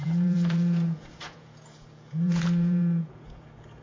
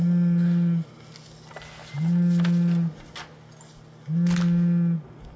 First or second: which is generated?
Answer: first